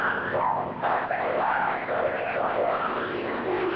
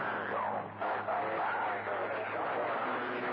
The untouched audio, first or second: second